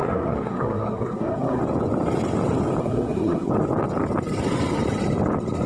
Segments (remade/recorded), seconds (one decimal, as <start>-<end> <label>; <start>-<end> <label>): 0.0-1.6 remade; 1.6-2.8 recorded; 2.8-3.5 remade; 3.5-5.7 recorded